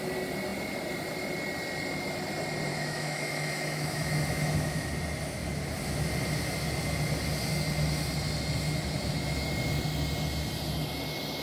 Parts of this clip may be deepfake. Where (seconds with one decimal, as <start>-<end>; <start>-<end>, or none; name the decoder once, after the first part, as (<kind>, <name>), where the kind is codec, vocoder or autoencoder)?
2.7-4.9 (autoencoder, DAC-VAE)